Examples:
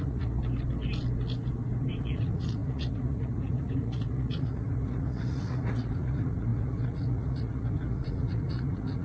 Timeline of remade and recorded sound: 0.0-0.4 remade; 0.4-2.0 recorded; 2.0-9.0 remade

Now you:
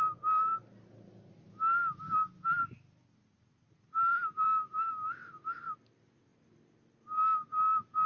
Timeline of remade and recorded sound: 0.0-4.1 recorded; 4.1-4.9 remade; 4.9-8.1 recorded

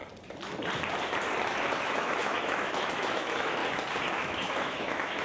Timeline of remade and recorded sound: 0.0-1.8 recorded; 1.8-3.6 remade; 3.6-4.1 recorded; 4.1-5.2 remade